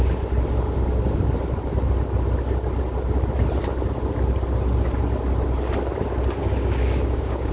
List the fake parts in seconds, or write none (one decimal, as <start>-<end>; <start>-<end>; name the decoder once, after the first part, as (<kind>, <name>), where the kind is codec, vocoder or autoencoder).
6.4-7.5 (codec, DAC)